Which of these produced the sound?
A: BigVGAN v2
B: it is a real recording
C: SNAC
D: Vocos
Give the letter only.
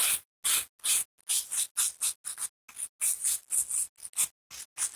B